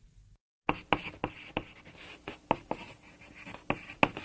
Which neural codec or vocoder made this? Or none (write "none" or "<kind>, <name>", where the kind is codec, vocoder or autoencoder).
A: none